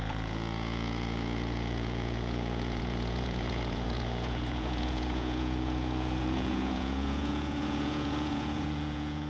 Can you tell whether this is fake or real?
fake